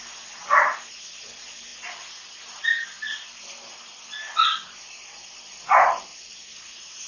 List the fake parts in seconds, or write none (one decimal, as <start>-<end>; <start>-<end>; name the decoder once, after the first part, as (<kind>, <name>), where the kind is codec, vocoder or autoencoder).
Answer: 6.1-7.1 (vocoder, Vocos)